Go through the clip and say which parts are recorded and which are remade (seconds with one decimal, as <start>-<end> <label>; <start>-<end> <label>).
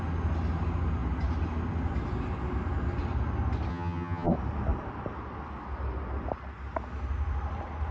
0.0-3.7 recorded; 3.7-4.3 remade; 4.3-7.9 recorded